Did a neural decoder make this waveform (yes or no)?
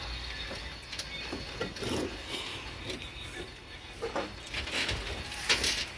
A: no